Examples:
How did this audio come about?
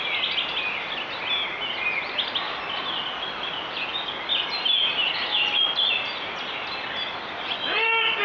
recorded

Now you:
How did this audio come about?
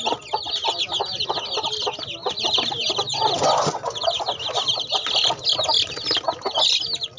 recorded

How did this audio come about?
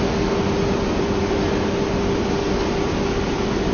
recorded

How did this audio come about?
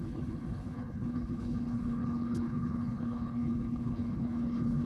remade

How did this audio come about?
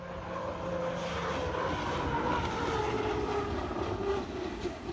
recorded